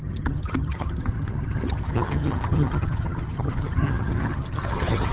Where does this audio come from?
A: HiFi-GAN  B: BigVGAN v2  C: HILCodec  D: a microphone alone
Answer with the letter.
A